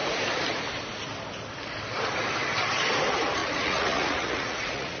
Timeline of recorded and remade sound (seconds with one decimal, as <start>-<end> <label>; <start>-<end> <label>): 0.0-3.4 recorded; 3.4-5.0 remade